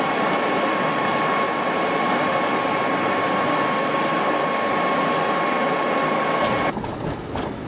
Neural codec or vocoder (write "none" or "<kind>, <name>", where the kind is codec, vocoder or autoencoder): none